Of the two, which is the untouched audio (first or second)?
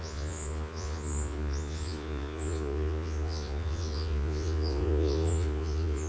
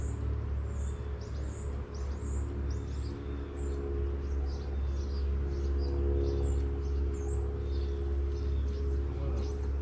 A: second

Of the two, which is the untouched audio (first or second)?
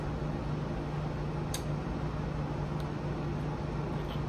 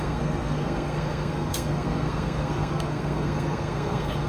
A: first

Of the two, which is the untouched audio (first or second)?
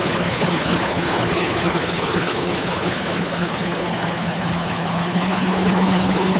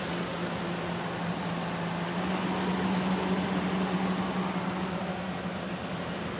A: second